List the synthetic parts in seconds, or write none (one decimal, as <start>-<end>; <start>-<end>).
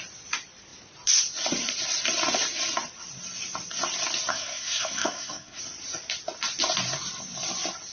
4.3-5.6